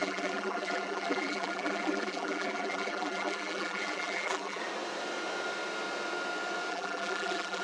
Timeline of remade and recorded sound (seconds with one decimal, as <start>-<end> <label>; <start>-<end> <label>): 0.0-4.6 remade; 4.6-6.7 recorded; 6.7-7.6 remade